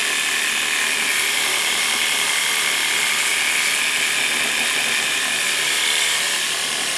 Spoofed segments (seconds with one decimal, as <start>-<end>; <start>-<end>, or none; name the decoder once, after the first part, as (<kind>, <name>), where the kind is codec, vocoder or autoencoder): 1.3-3.3 (vocoder, BigVGAN v2); 5.1-7.0